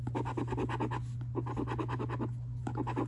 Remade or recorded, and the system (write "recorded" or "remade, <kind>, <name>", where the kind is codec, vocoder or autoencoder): recorded